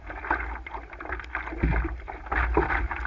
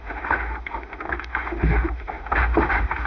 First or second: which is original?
first